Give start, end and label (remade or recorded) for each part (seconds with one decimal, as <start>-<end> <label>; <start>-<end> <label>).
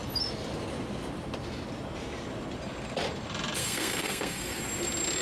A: 0.0-3.6 recorded; 3.6-4.6 remade; 4.6-5.2 recorded